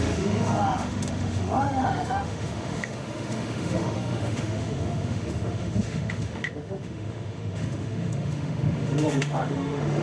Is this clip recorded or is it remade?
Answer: remade